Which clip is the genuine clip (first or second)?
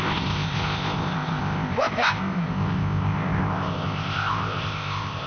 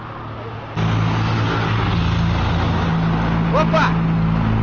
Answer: second